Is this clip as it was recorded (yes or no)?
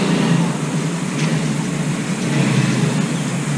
yes